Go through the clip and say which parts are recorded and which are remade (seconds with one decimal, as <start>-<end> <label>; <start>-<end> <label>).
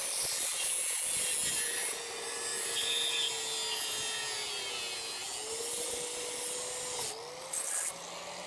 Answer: 0.0-8.5 recorded